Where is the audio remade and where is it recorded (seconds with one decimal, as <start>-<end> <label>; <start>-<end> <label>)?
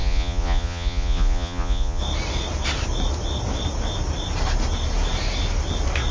0.0-2.0 remade; 2.0-6.1 recorded